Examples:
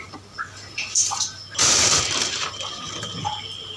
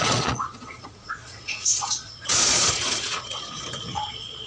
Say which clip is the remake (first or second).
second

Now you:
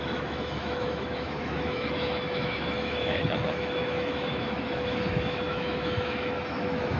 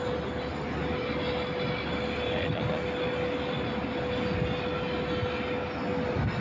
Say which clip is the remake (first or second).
first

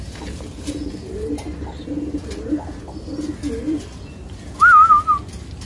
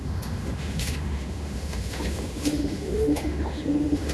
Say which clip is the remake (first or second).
second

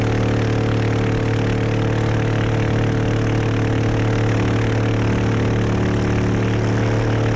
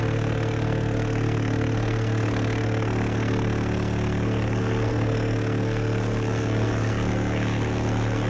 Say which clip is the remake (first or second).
second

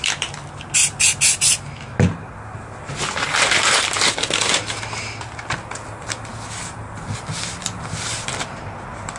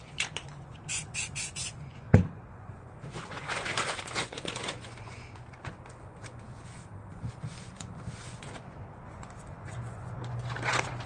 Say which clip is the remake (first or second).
second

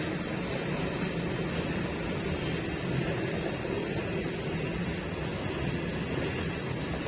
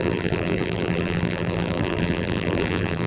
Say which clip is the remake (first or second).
second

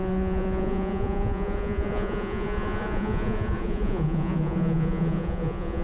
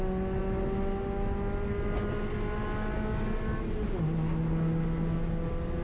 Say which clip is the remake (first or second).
first